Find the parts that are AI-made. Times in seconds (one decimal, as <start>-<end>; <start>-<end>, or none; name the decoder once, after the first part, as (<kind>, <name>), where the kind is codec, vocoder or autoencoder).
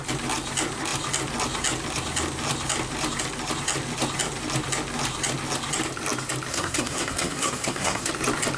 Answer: 6.5-8.1 (codec, SNAC)